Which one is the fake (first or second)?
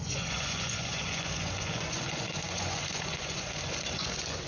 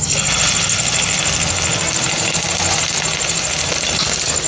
first